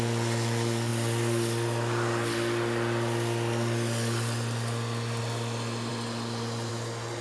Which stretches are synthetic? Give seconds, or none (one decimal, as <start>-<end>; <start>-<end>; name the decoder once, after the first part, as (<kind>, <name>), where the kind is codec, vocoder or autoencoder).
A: none